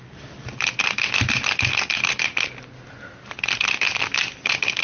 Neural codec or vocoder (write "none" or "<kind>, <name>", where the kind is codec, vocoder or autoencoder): none